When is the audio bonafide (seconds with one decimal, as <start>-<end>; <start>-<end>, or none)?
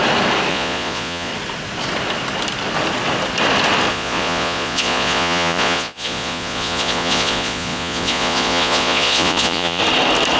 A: 0.0-0.5; 1.3-3.9; 9.8-10.4